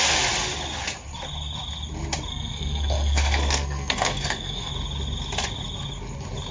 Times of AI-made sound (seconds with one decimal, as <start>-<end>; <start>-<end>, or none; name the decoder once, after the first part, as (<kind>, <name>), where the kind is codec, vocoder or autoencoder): 2.3-4.7 (codec, SNAC)